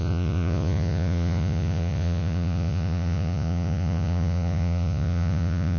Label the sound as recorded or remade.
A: remade